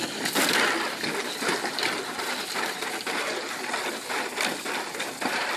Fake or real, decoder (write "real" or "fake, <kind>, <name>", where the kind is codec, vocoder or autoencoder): real